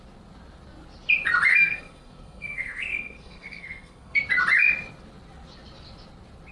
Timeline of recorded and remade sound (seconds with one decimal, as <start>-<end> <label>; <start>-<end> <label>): 0.0-1.5 recorded; 1.5-4.2 remade; 4.2-6.5 recorded